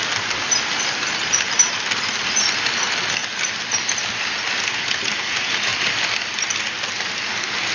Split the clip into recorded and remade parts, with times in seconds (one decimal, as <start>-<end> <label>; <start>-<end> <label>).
0.0-7.7 recorded